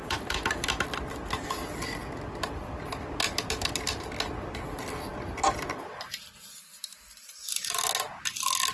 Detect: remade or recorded recorded